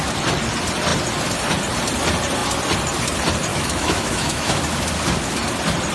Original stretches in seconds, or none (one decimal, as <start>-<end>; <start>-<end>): 0.0-3.5; 4.6-5.9